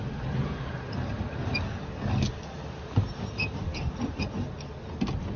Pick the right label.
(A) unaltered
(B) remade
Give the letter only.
A